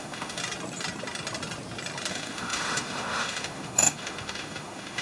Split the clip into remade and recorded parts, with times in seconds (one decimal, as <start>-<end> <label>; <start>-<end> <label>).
0.0-0.4 remade; 0.4-2.1 recorded; 2.1-5.0 remade